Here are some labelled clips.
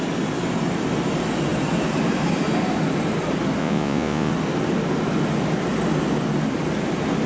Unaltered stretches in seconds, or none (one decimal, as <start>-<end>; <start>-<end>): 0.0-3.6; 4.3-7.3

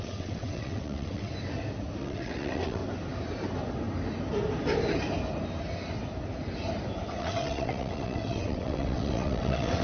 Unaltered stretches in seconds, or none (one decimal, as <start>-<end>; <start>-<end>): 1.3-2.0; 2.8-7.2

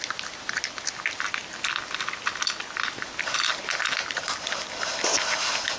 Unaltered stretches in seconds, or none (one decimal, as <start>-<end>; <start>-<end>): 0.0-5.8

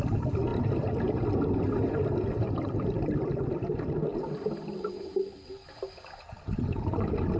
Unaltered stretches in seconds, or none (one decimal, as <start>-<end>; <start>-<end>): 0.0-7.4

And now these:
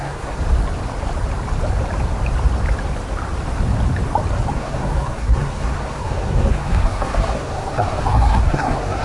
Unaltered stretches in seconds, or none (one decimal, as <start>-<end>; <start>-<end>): 0.4-4.5

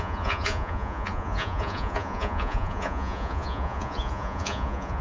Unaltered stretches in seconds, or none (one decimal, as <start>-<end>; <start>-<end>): none

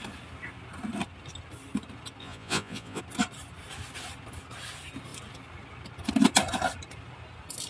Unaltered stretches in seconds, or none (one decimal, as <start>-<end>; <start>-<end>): 0.0-2.2; 3.0-7.7

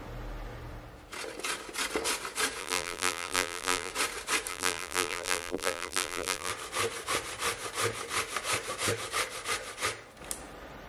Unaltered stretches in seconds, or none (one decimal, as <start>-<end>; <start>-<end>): 0.0-2.6; 3.9-4.5; 6.5-10.9